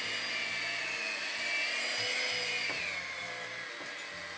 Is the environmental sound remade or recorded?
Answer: recorded